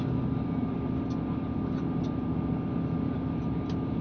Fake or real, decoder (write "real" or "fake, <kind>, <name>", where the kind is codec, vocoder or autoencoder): real